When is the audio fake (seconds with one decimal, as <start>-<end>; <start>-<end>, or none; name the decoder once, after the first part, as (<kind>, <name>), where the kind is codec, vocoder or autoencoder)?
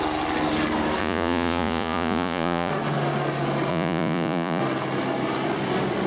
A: 1.0-2.7 (vocoder, Vocos); 3.7-4.6